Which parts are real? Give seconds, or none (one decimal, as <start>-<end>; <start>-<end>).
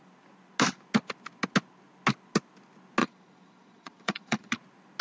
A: 0.0-3.0; 4.5-5.0